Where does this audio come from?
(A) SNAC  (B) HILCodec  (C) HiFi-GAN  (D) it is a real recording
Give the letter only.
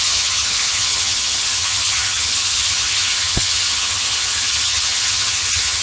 C